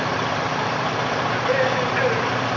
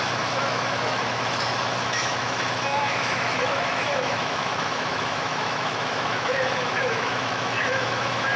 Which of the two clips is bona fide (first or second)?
first